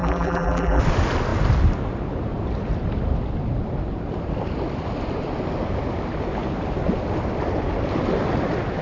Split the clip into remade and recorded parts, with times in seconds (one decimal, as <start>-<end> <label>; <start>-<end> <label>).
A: 0.0-0.8 remade; 0.8-8.8 recorded